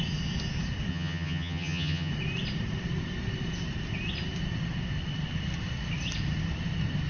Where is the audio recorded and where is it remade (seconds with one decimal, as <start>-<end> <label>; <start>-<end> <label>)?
0.0-0.9 recorded; 0.9-2.1 remade; 2.1-7.1 recorded